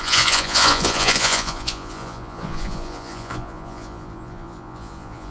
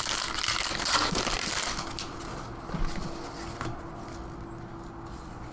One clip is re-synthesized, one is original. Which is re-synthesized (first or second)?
first